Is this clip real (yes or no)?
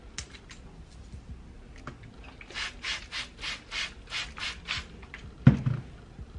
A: yes